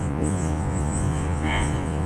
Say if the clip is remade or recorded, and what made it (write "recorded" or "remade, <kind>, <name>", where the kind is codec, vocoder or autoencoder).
remade, vocoder, Vocos